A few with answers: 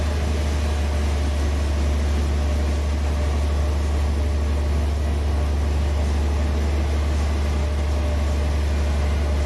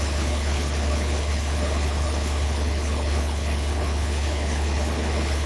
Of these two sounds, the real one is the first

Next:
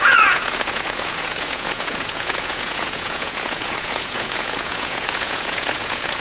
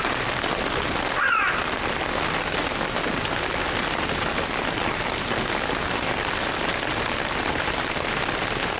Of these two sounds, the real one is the second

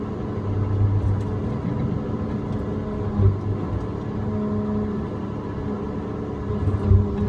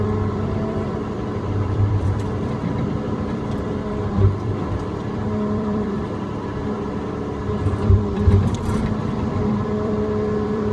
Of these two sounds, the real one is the first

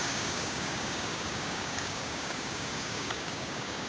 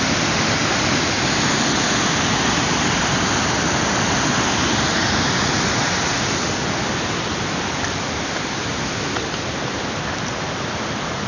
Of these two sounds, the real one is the second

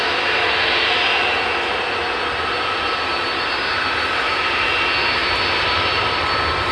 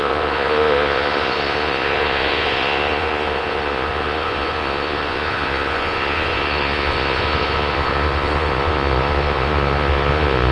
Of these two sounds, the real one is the first